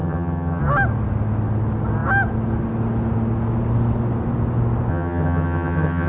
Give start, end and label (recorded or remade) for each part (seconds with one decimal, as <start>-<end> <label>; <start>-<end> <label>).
0.0-0.6 remade; 0.6-4.9 recorded; 4.9-6.1 remade